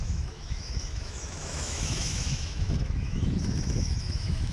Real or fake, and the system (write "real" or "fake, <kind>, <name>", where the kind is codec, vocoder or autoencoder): fake, autoencoder, DAC-VAE